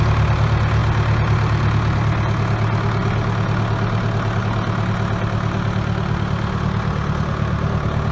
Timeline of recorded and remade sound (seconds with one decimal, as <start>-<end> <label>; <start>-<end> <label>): 0.0-8.1 recorded